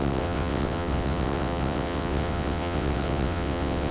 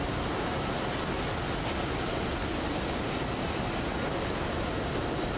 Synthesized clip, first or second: first